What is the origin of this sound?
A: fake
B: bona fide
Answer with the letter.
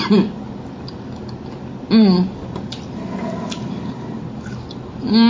B